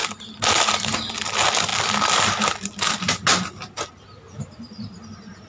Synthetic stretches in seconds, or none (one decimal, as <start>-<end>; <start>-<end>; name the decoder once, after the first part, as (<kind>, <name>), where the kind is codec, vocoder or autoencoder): none

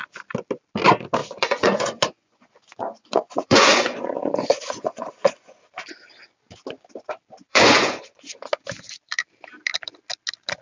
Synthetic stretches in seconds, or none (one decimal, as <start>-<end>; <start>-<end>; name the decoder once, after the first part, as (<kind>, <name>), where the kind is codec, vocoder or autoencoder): 1.2-5.6 (vocoder, Vocos); 7.5-8.3

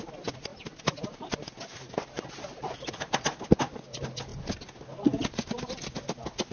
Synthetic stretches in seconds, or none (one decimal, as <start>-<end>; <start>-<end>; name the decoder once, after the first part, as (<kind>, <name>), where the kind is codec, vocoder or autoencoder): none

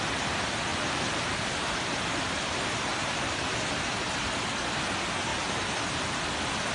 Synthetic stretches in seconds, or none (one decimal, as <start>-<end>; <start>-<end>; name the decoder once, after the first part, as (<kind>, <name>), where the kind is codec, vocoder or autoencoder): 0.7-3.4 (vocoder, BigVGAN v2)

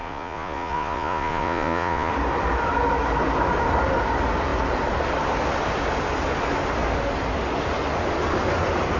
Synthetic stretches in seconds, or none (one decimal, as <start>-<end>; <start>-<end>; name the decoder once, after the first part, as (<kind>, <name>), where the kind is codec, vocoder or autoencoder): 0.0-2.1 (vocoder, Vocos)